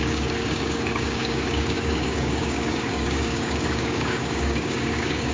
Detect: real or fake fake